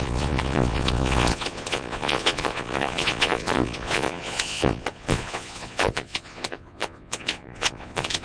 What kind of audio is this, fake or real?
fake